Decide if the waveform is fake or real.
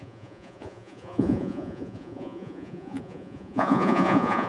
fake